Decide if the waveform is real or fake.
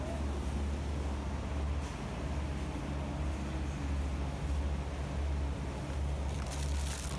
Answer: real